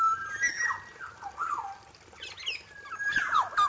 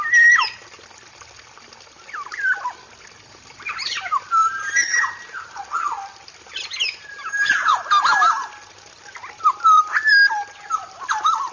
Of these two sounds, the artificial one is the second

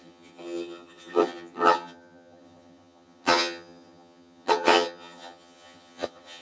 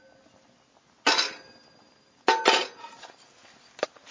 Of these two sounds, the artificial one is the first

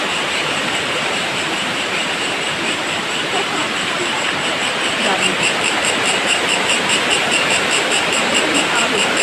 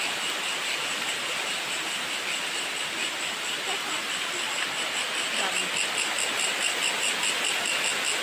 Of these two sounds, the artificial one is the first